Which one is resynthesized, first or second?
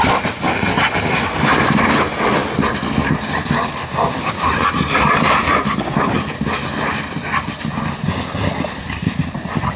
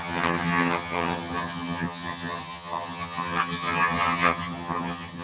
second